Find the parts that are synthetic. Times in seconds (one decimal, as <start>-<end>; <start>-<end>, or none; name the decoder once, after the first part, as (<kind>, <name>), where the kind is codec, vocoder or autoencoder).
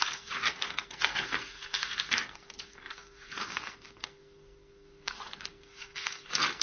0.0-6.6 (codec, SNAC)